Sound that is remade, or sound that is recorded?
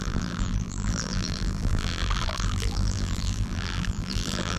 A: remade